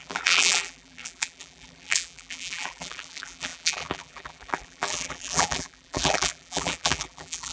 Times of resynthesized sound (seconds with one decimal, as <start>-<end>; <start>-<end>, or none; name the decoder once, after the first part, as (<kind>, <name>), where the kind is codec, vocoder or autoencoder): 0.0-7.5 (vocoder, BigVGAN v2)